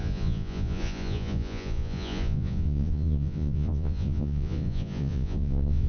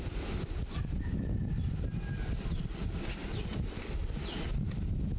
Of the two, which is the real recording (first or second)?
second